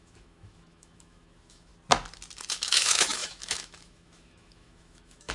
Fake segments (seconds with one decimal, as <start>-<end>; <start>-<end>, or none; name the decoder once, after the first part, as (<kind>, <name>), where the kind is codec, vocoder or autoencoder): 0.0-1.7 (autoencoder, DAC-VAE); 2.5-5.3